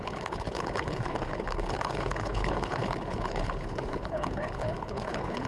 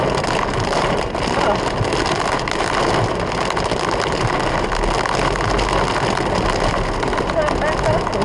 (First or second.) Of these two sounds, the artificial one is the first